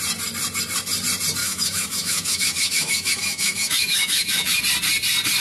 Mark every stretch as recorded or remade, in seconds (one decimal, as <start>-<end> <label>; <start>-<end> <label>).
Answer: 0.0-1.4 recorded; 1.4-4.6 remade; 4.6-5.4 recorded